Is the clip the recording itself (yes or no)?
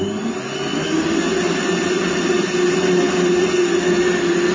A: yes